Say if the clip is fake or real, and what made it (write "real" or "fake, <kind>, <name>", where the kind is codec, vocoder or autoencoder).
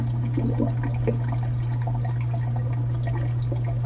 real